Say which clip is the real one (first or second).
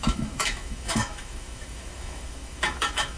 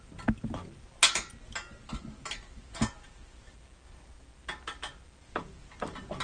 second